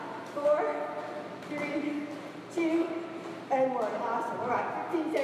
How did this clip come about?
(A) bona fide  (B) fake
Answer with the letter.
A